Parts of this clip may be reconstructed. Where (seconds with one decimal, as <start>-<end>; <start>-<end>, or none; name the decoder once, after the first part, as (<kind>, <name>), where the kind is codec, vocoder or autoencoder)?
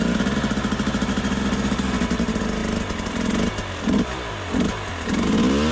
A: none